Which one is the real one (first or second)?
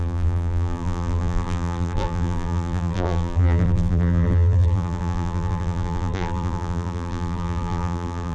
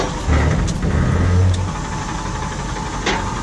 second